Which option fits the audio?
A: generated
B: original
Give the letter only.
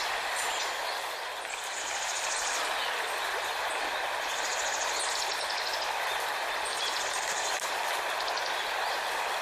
B